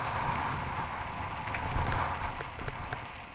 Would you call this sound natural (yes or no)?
yes